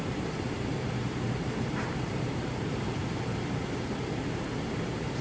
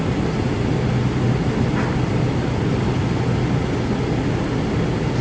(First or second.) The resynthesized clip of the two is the first